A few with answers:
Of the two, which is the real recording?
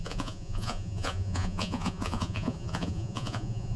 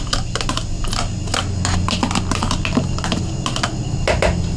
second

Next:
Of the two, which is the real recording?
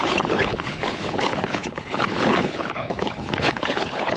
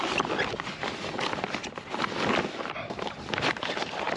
second